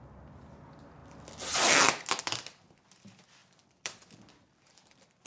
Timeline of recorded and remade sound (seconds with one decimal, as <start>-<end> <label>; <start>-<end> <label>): 0.0-3.4 recorded; 3.4-4.1 remade; 4.1-5.3 recorded